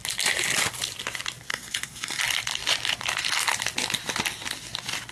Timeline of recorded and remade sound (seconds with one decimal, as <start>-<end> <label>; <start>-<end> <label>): 0.0-1.5 recorded; 1.5-2.2 remade; 2.2-5.1 recorded